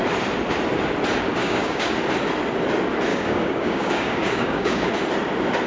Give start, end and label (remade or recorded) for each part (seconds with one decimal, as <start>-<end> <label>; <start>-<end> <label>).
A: 0.0-1.4 recorded; 1.4-1.9 remade; 1.9-3.1 recorded; 3.1-4.9 remade; 4.9-5.7 recorded